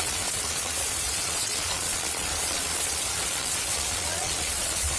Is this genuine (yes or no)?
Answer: no